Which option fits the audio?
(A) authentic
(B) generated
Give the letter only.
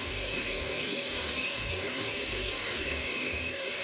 B